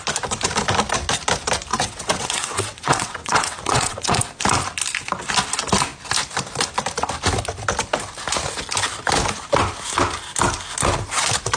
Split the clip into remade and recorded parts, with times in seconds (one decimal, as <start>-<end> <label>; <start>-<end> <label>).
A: 0.0-1.7 recorded; 1.7-4.2 remade; 4.2-11.6 recorded